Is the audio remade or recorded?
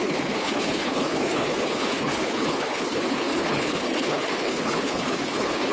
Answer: remade